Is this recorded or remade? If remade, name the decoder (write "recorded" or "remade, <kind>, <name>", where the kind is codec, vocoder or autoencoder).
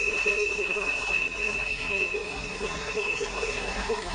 remade, codec, SNAC